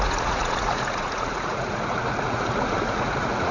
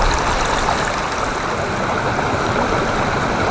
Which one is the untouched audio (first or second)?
second